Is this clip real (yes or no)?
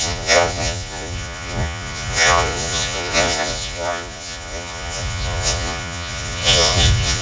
no